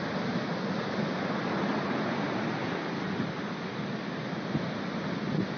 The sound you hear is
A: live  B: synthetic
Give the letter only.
A